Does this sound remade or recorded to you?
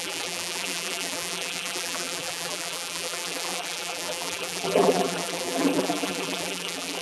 remade